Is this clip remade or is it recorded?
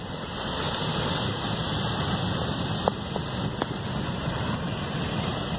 recorded